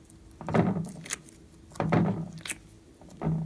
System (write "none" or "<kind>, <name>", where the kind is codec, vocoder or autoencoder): none